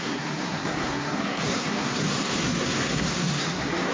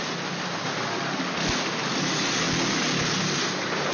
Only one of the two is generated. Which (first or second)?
first